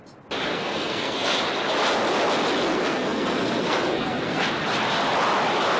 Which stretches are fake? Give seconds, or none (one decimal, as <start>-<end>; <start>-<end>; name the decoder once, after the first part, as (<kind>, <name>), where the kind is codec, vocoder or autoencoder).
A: 0.5-1.4 (codec, SNAC); 2.7-4.5